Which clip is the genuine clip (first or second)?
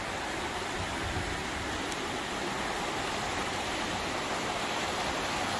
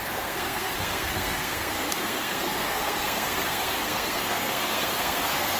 first